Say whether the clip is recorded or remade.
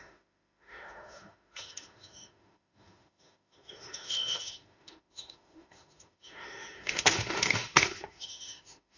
remade